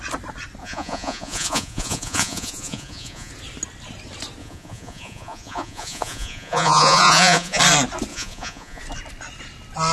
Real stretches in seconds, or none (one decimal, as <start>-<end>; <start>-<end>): 0.0-0.6; 3.3-4.4; 7.6-8.1; 8.8-9.9